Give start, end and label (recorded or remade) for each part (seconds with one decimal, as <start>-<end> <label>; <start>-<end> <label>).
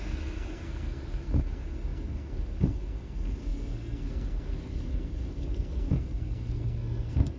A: 0.0-7.4 remade